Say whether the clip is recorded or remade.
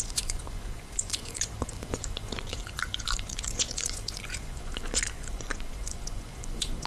remade